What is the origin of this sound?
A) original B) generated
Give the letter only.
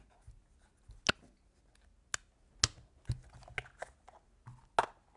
A